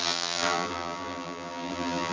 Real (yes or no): no